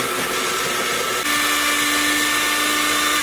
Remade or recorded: recorded